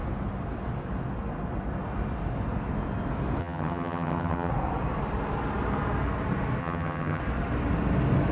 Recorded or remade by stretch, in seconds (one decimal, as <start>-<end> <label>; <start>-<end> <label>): 0.0-3.4 recorded; 3.4-4.5 remade; 4.5-6.6 recorded; 6.6-7.2 remade; 7.2-8.3 recorded